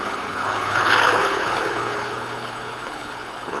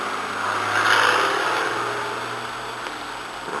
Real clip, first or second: second